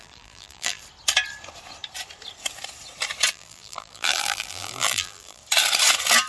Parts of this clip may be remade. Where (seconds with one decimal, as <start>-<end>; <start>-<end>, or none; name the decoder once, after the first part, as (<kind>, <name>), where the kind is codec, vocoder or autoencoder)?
0.0-0.8 (vocoder, BigVGAN v2); 3.3-5.4

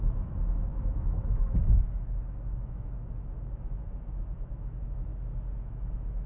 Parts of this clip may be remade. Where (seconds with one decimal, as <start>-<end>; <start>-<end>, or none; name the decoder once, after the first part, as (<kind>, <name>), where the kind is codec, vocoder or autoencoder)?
0.0-5.1 (autoencoder, DAC-VAE); 5.6-6.3

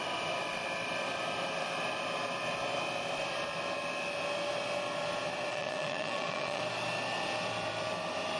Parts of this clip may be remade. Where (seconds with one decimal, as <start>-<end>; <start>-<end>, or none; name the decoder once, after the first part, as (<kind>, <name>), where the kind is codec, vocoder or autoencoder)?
5.5-6.6 (vocoder, Vocos)

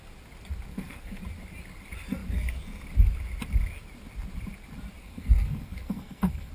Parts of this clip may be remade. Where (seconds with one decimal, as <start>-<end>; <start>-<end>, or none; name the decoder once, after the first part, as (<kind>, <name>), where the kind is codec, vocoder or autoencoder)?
0.7-1.2 (codec, SNAC); 5.0-6.5